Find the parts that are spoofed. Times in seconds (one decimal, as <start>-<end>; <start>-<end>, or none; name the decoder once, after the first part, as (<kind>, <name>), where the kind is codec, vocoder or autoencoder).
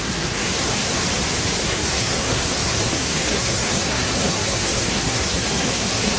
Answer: 0.0-1.0 (codec, SNAC); 1.6-6.2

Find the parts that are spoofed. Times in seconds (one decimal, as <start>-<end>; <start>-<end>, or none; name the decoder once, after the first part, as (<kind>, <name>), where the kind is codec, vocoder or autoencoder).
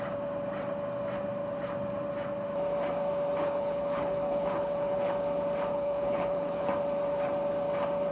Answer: 3.4-5.1 (codec, HILCodec); 5.7-6.7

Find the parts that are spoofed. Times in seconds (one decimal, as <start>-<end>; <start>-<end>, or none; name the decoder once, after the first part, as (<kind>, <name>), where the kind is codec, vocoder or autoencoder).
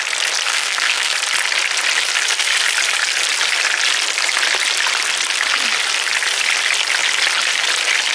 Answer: 0.5-1.1 (codec, SNAC)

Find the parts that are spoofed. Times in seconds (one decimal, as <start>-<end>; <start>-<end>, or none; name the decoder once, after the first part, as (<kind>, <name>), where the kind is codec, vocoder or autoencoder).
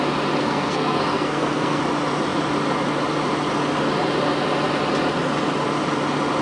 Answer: 0.4-1.8 (codec, SNAC)